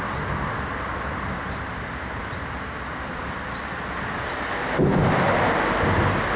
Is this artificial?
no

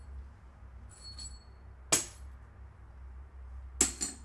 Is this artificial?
no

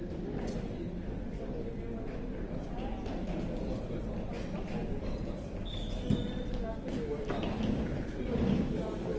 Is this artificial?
no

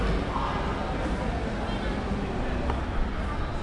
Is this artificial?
no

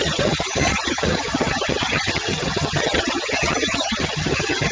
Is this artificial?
yes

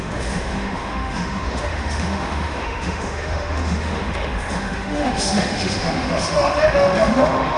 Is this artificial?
yes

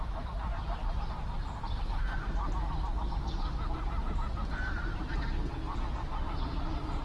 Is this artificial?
no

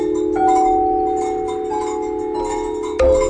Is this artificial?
no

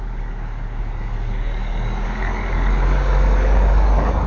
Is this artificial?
yes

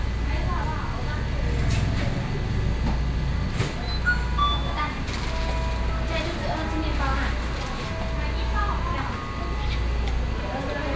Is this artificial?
no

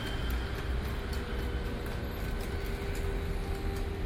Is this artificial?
no